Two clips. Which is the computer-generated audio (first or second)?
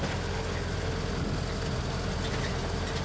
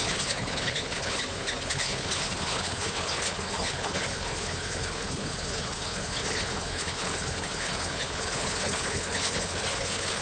second